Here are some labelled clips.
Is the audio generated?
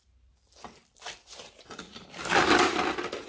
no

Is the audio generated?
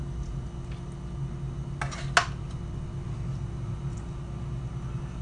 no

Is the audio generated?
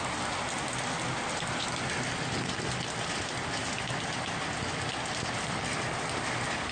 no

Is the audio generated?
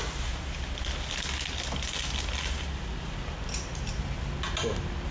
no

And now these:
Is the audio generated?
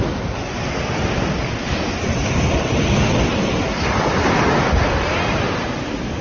no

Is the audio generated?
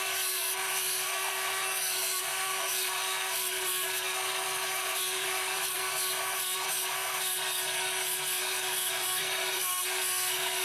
yes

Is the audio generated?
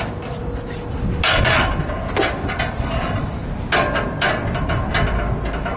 no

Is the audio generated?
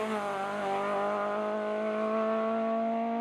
no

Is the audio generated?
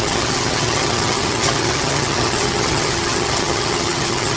yes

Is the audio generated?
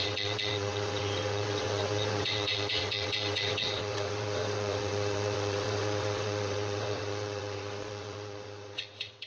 yes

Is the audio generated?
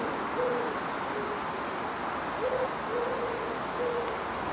no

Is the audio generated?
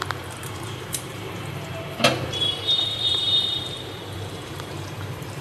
yes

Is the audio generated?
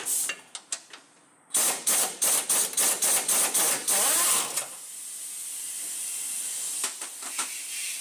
no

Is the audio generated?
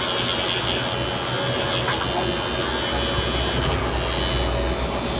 no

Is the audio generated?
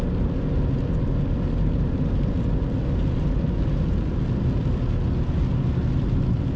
no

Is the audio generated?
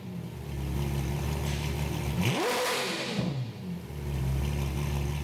no